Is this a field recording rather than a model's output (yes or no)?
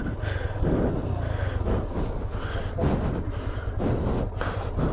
yes